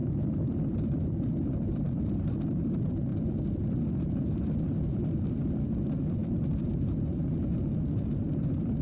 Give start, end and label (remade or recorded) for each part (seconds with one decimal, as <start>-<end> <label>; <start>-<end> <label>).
0.0-8.8 recorded

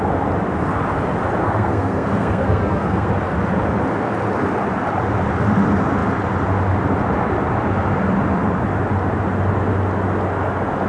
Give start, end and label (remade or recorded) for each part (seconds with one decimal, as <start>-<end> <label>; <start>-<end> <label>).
0.0-1.4 recorded; 1.4-3.1 remade; 3.1-10.9 recorded

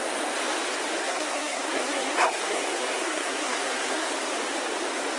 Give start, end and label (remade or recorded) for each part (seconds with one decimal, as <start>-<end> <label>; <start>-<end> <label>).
0.0-1.0 recorded; 1.0-4.1 remade; 4.1-5.2 recorded

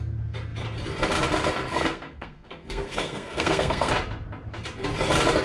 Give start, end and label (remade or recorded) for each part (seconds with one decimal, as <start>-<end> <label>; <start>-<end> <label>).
0.0-1.7 recorded; 1.7-3.9 remade; 3.9-5.4 recorded

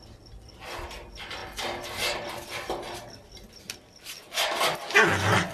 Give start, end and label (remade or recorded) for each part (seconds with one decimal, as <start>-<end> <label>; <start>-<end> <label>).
0.0-5.5 recorded

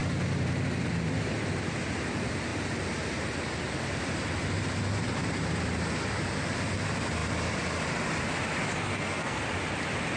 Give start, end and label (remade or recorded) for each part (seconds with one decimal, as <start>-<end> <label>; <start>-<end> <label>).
0.0-8.9 recorded; 8.9-9.4 remade; 9.4-10.2 recorded

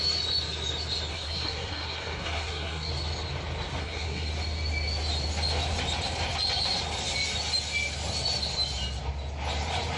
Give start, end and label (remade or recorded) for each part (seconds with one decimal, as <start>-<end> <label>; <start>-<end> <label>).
0.0-1.1 recorded; 1.1-2.9 remade; 2.9-3.8 recorded; 3.8-4.3 remade; 4.3-10.0 recorded